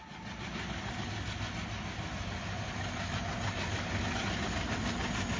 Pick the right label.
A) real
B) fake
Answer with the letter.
A